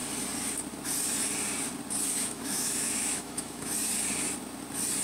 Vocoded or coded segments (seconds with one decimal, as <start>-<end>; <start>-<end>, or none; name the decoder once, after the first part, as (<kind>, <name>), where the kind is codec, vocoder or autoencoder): 2.2-3.7 (autoencoder, DAC-VAE)